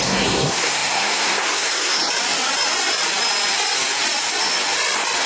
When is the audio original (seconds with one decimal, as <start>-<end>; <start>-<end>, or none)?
2.0-5.3